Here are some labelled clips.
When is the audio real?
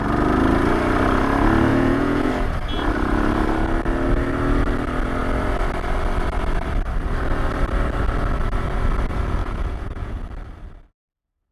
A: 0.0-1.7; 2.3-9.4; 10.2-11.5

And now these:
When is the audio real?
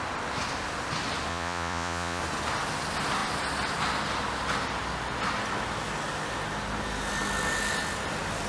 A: 0.0-1.3; 2.2-8.5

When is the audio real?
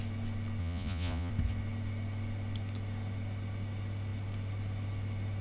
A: 0.0-0.6; 1.3-5.4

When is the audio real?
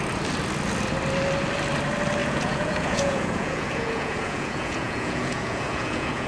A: 0.0-2.2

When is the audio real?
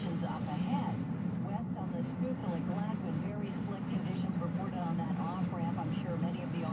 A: 0.0-6.7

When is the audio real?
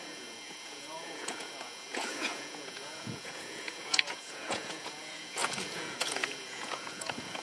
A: none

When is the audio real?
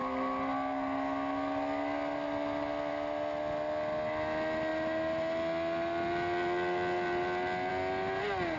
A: 0.0-8.6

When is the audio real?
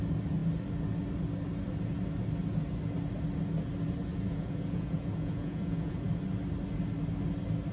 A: 0.0-4.1; 6.1-7.7